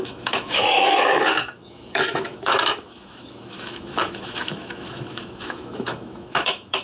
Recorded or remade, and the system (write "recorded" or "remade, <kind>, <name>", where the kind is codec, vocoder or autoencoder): remade, autoencoder, DAC-VAE